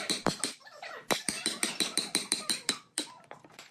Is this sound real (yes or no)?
no